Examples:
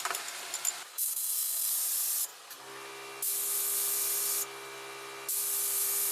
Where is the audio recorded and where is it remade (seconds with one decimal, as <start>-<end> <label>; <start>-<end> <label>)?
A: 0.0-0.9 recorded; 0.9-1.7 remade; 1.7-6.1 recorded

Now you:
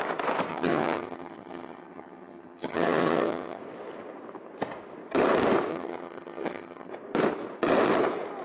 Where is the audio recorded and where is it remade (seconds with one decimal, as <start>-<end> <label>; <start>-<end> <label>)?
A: 0.0-0.5 recorded; 0.5-3.6 remade; 3.6-5.7 recorded; 5.7-6.9 remade; 6.9-8.4 recorded

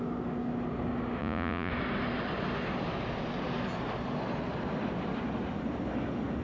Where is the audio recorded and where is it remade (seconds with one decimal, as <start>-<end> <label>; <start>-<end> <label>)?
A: 0.0-1.2 recorded; 1.2-1.7 remade; 1.7-6.4 recorded

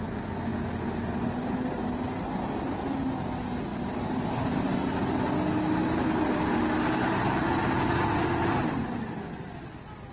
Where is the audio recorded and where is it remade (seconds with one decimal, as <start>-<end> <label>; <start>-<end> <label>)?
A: 0.0-10.1 recorded